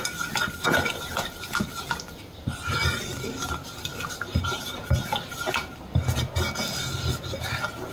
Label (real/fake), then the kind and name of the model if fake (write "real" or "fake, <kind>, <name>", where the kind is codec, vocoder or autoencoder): real